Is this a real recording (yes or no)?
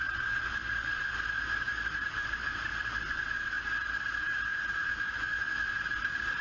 yes